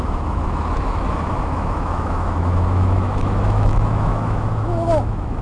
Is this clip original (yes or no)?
no